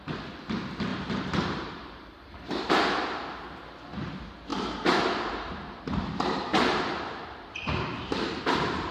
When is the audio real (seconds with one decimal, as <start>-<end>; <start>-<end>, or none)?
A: 0.0-0.9; 2.7-4.5; 5.8-6.5; 8.4-8.9